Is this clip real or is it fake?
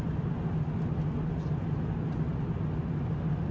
real